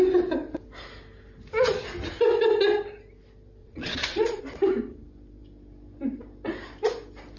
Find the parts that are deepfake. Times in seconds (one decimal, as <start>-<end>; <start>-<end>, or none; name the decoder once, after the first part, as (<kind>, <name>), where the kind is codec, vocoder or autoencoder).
3.6-4.4 (vocoder, Vocos)